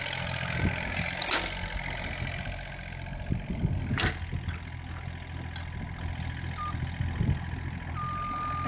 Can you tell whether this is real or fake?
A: real